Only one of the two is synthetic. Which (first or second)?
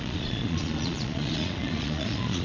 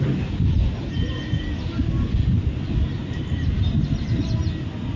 first